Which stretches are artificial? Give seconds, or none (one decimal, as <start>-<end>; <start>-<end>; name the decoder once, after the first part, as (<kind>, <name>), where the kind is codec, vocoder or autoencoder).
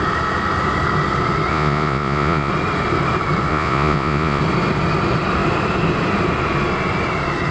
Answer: 1.5-2.5 (vocoder, Vocos); 3.5-4.4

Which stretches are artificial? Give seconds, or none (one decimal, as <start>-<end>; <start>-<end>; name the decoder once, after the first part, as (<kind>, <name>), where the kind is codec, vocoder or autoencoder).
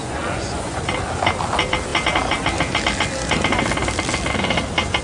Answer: 0.0-0.8 (vocoder, Vocos)